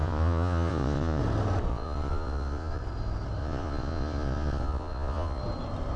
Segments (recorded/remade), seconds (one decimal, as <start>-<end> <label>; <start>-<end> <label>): 0.0-1.2 remade; 1.2-1.7 recorded; 1.7-2.8 remade; 2.8-3.4 recorded; 3.4-5.4 remade; 5.4-6.0 recorded